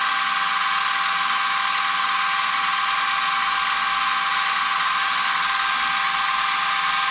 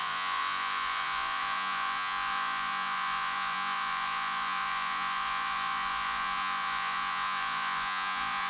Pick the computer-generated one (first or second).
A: second